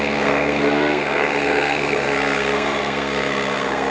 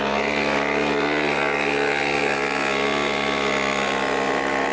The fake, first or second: first